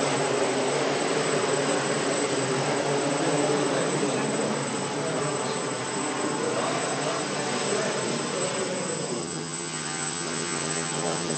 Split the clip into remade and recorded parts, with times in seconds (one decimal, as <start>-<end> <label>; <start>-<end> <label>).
0.0-9.2 recorded; 9.2-11.4 remade